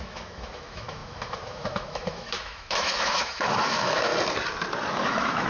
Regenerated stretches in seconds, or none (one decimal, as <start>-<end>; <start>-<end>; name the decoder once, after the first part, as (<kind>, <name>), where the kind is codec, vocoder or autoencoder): 0.0-4.1 (autoencoder, DAC-VAE); 4.9-5.5